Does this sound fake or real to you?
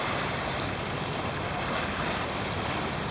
real